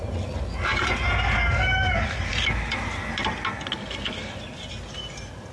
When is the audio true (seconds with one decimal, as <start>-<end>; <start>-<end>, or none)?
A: 0.0-5.5